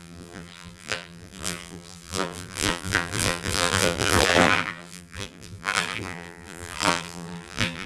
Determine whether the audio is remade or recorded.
remade